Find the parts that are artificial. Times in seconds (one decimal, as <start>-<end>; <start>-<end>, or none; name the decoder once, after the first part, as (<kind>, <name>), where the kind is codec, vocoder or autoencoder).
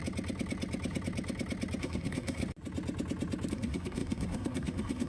1.8-2.4 (codec, SNAC); 3.5-5.1